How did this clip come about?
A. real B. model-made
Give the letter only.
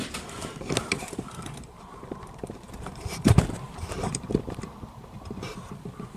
B